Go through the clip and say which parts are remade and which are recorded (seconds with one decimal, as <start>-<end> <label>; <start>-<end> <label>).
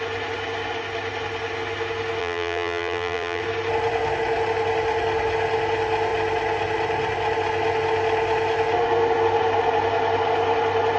0.0-2.2 recorded; 2.2-3.4 remade; 3.4-11.0 recorded